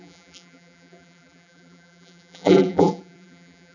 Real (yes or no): no